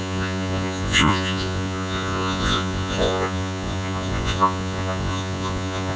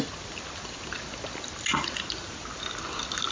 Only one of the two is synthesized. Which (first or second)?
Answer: first